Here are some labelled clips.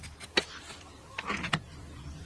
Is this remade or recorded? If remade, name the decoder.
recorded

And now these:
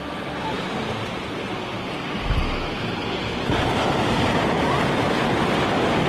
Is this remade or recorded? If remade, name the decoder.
recorded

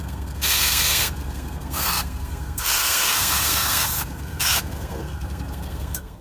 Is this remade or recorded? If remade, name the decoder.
remade, codec, SNAC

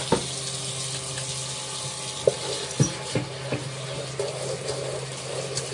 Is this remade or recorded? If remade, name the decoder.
recorded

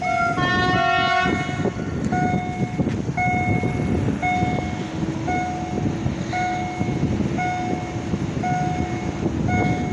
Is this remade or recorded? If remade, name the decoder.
recorded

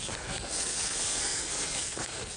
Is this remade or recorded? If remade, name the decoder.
remade, codec, SNAC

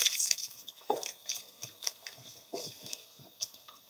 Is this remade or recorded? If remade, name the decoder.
remade, codec, SNAC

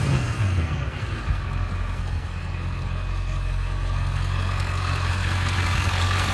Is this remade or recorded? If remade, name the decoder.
remade, codec, SNAC